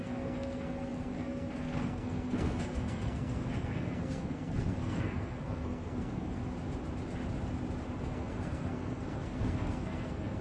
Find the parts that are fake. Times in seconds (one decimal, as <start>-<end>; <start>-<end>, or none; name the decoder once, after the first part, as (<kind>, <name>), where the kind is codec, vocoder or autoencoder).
0.0-6.4 (codec, SNAC); 8.0-10.4